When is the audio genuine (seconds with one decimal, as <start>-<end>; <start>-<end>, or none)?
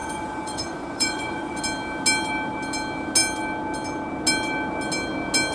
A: 1.6-5.5